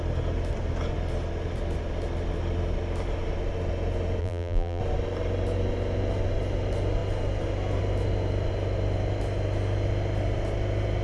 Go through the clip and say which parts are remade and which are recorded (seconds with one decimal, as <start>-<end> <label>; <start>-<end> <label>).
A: 0.0-4.2 recorded; 4.2-4.8 remade; 4.8-11.0 recorded